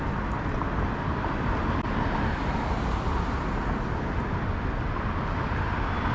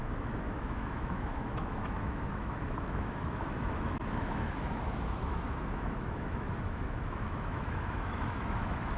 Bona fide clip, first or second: first